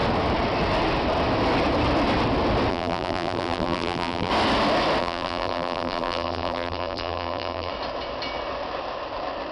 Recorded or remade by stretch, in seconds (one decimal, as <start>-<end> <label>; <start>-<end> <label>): 0.0-2.7 recorded; 2.7-4.3 remade; 4.3-5.0 recorded; 5.0-7.7 remade; 7.7-9.5 recorded